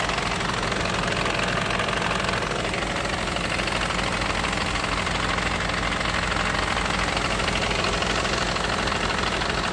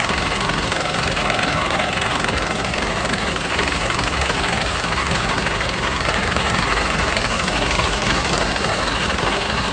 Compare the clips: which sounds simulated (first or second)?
second